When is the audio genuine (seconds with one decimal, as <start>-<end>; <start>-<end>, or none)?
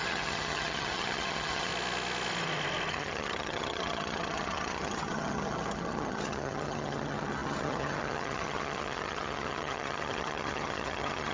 1.7-2.9